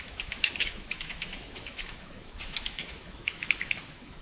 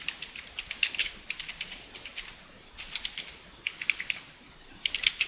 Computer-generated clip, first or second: first